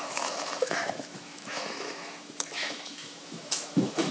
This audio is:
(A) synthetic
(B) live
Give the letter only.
A